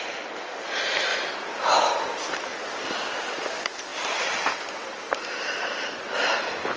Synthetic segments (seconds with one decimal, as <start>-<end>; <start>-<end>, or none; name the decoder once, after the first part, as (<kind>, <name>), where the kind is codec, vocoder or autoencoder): none